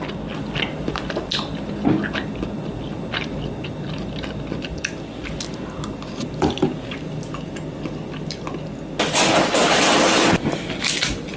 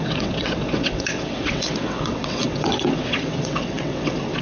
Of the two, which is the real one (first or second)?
first